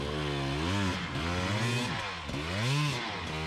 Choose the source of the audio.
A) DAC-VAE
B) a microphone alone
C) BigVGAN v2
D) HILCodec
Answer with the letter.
B